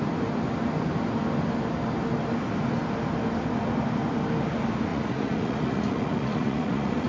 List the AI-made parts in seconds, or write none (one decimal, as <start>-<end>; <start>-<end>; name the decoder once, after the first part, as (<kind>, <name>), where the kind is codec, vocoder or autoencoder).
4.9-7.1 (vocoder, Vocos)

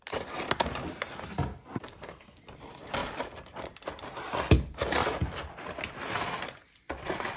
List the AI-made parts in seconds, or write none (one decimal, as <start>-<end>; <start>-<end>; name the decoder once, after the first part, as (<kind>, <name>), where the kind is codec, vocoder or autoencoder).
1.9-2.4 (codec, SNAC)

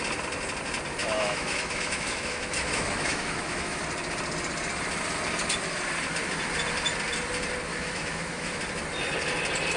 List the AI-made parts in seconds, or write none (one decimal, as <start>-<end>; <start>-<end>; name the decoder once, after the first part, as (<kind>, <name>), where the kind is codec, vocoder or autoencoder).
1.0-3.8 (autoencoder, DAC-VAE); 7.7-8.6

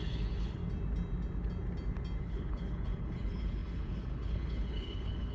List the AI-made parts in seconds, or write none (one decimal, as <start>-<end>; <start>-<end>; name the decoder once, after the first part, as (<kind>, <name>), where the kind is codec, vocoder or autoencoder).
0.0-0.6 (codec, HILCodec); 2.2-5.3

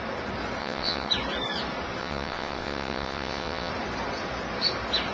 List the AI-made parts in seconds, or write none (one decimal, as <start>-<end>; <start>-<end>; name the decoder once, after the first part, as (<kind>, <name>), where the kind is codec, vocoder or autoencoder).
0.6-1.1 (vocoder, WaveNeXt); 2.0-3.7

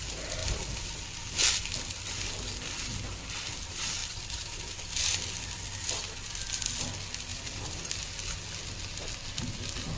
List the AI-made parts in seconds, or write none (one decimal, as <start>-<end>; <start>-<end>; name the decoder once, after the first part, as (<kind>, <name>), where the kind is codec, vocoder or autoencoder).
0.4-1.0 (vocoder, BigVGAN v2); 4.0-4.8; 7.3-7.9

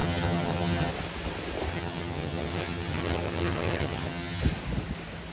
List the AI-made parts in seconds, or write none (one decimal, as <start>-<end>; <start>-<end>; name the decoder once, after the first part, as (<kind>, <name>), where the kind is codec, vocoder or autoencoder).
0.0-0.9 (vocoder, HiFi-GAN); 1.7-4.4